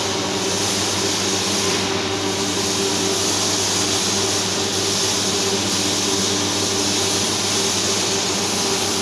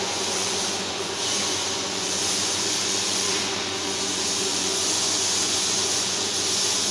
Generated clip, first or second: second